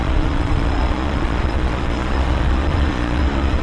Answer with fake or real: fake